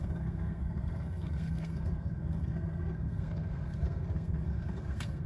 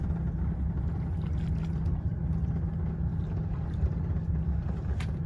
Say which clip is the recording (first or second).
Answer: second